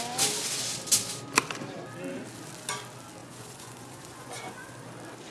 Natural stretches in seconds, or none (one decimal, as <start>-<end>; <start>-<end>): 0.0-3.2; 4.7-5.3